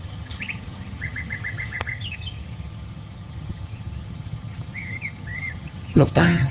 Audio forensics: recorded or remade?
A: remade